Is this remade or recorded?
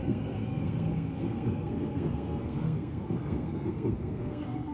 remade